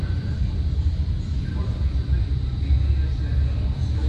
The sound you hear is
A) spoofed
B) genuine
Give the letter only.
B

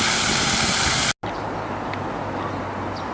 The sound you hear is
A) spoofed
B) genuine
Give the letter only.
B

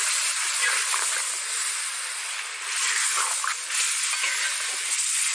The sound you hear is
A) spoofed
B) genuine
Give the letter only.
B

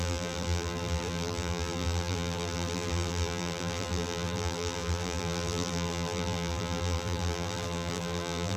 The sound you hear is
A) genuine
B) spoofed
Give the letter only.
B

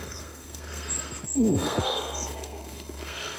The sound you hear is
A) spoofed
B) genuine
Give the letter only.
A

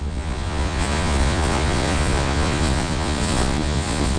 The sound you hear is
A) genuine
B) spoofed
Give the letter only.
B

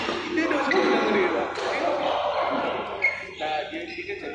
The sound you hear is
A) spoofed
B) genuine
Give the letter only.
B